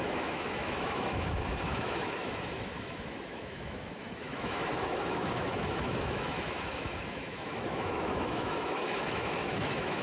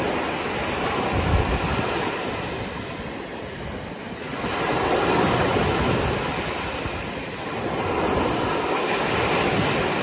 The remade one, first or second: first